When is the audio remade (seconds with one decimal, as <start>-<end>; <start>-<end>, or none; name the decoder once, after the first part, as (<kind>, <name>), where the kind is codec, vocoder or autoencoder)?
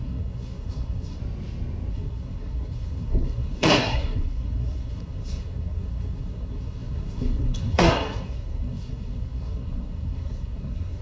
0.0-1.2 (codec, SNAC); 1.9-11.0